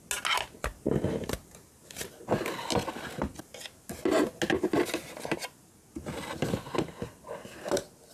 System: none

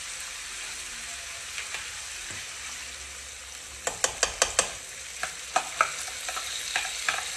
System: none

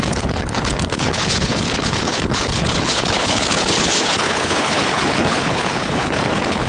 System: codec, HILCodec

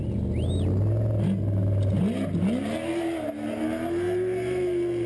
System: none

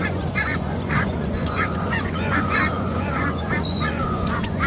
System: vocoder, Vocos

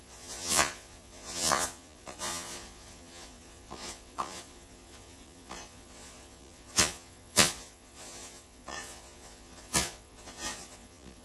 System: vocoder, Vocos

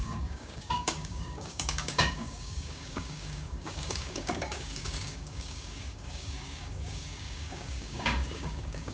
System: codec, DAC